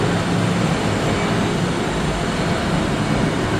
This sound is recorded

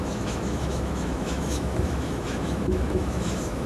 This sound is remade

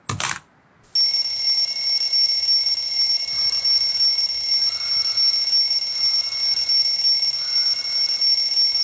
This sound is recorded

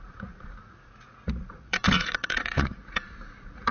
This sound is remade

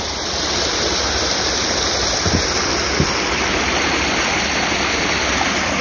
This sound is recorded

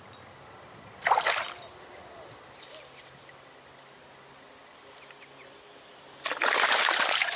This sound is recorded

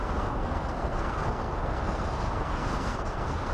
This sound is remade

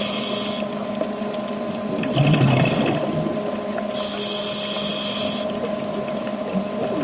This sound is recorded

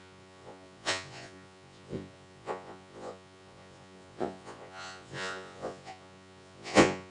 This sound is remade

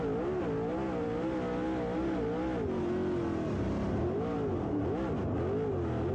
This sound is recorded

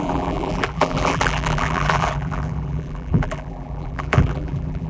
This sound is remade